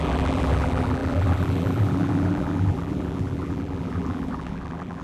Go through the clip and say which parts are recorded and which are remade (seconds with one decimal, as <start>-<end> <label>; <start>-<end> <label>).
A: 0.0-5.0 remade

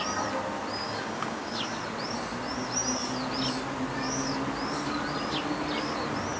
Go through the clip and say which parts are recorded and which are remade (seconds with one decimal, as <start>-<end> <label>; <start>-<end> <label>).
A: 0.0-0.8 recorded; 0.8-1.5 remade; 1.5-6.4 recorded